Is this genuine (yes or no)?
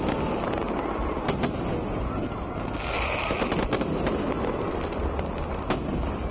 yes